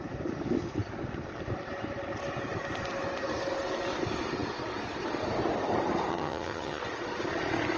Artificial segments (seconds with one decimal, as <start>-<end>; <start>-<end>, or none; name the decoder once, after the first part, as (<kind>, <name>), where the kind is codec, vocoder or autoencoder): 6.1-6.8 (vocoder, HiFi-GAN)